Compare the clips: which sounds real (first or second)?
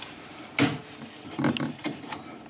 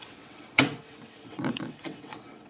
first